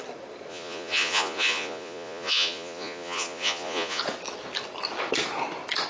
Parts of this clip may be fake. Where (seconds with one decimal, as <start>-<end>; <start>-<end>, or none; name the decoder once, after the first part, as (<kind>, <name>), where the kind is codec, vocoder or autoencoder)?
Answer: 0.5-4.0 (vocoder, Vocos)